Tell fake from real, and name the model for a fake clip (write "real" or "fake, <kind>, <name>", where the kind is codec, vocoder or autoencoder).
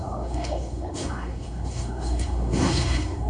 fake, codec, SNAC